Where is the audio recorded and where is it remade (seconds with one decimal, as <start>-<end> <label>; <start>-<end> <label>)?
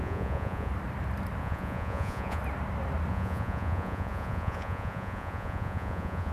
0.0-0.7 remade; 0.7-1.4 recorded; 1.4-2.4 remade; 2.4-3.1 recorded; 3.1-6.3 remade